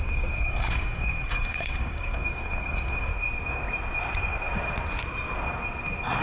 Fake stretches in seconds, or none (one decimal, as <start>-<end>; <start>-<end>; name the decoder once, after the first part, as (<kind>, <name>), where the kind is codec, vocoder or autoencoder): 0.0-3.1 (codec, DAC)